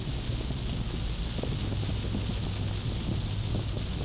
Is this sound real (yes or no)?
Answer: yes